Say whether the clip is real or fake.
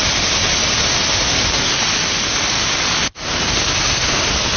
real